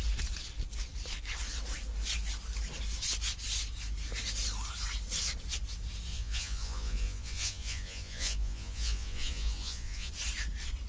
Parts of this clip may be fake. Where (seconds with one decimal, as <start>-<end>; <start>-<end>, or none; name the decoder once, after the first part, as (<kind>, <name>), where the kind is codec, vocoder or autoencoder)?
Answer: 6.1-10.1 (vocoder, Vocos)